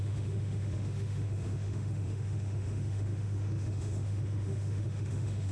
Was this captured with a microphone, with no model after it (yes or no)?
no